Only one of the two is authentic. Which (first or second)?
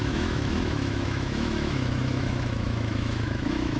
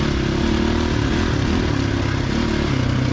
second